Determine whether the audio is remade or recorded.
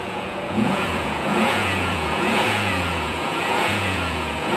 remade